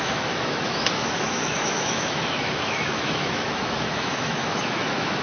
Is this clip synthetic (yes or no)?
yes